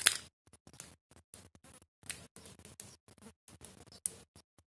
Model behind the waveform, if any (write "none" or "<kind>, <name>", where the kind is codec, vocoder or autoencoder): none